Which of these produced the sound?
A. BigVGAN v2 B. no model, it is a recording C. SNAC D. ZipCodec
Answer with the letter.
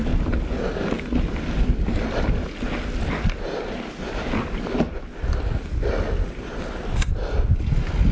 B